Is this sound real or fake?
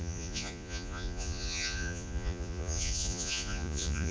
fake